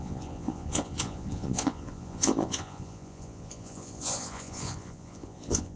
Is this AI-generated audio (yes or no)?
yes